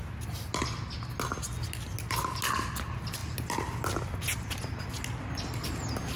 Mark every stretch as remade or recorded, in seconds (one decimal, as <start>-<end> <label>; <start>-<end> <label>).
0.0-6.2 recorded